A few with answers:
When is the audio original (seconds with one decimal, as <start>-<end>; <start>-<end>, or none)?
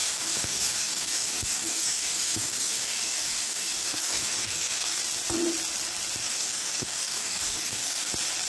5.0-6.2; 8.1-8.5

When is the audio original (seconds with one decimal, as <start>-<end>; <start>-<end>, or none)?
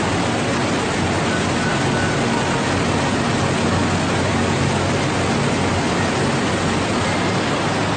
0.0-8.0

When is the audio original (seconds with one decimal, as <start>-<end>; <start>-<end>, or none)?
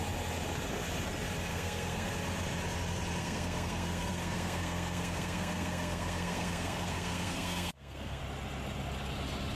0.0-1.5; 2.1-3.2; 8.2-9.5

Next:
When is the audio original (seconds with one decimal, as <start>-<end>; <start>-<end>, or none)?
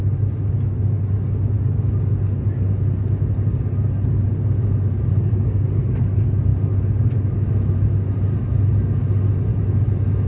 0.0-5.1; 6.0-10.3